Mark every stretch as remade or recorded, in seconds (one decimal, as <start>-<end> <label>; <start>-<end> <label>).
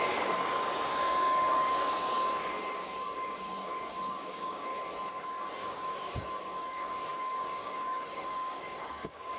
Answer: 0.0-4.7 remade; 4.7-5.6 recorded; 5.6-9.4 remade